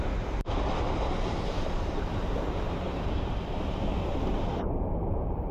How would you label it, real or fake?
fake